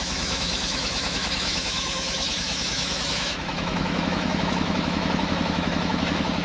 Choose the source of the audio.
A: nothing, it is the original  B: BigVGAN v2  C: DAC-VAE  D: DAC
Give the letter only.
C